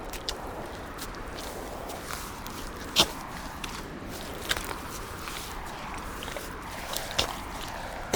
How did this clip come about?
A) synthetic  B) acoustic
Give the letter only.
A